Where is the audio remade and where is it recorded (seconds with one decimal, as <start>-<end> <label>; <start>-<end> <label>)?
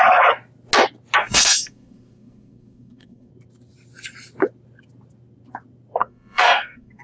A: 0.0-1.2 recorded; 1.2-3.3 remade; 3.3-6.0 recorded; 6.0-7.0 remade